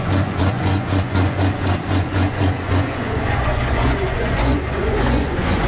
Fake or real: fake